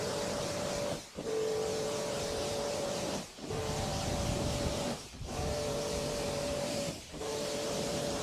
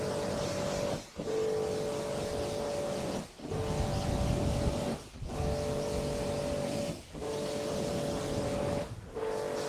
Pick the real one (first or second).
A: second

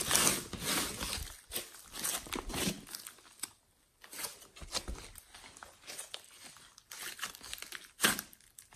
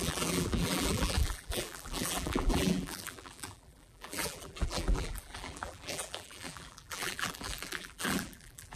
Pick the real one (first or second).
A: first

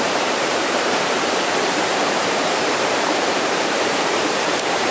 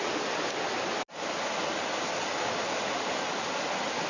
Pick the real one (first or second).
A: second